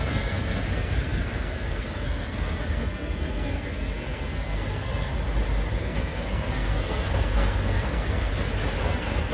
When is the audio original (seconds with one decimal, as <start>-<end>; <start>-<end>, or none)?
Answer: 5.1-5.8; 8.3-8.8